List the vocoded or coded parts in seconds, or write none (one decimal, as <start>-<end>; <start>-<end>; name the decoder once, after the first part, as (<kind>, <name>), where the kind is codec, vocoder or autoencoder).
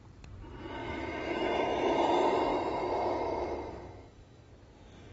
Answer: 0.8-2.0 (autoencoder, DAC-VAE); 2.5-4.5